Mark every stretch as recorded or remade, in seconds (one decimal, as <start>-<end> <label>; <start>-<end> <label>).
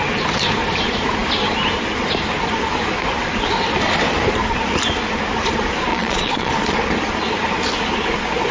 0.0-5.9 recorded; 5.9-6.5 remade; 6.5-8.5 recorded